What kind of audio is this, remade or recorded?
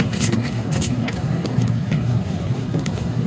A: remade